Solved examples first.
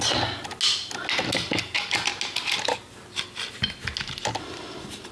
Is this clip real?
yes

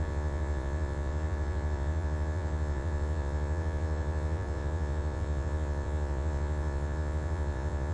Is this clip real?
no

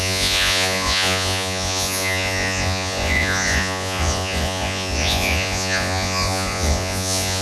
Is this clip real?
no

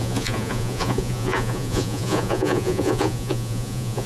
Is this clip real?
no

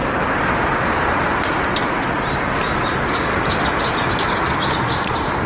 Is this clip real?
yes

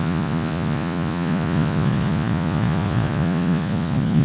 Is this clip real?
no